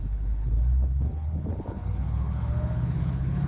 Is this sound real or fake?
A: fake